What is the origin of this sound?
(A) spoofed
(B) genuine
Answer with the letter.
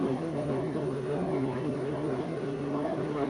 A